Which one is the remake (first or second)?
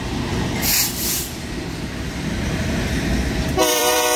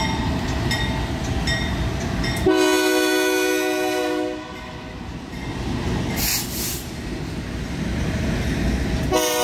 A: first